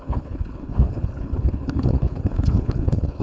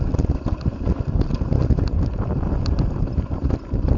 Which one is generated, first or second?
first